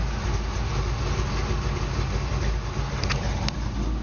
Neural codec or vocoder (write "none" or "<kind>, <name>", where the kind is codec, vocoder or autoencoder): none